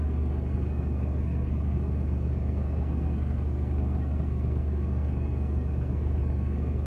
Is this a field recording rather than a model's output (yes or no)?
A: no